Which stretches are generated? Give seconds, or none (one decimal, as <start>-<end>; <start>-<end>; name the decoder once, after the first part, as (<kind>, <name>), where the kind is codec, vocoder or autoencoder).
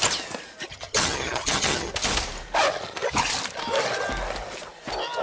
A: 0.7-1.9 (vocoder, HiFi-GAN)